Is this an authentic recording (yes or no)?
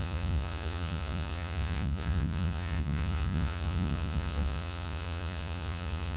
no